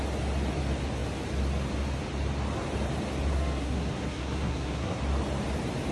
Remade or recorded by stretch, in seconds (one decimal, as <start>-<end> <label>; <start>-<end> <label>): 0.0-3.3 recorded; 3.3-5.0 remade; 5.0-5.9 recorded